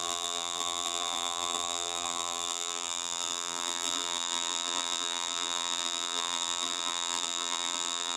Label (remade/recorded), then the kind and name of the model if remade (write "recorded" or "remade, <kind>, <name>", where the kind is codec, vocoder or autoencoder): remade, vocoder, BigVGAN v2